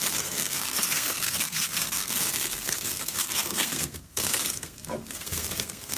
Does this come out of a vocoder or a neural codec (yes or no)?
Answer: yes